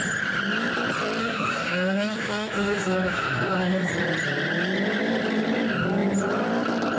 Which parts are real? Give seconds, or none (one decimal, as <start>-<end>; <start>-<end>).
0.0-1.2; 3.9-7.0